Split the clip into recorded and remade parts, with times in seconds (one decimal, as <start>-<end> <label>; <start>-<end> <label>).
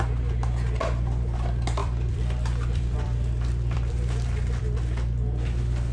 0.0-1.8 recorded; 1.8-4.6 remade; 4.6-5.9 recorded